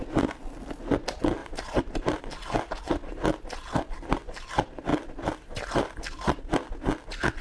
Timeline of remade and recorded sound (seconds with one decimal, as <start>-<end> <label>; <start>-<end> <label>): 0.0-1.4 recorded; 1.4-2.2 remade; 2.2-7.4 recorded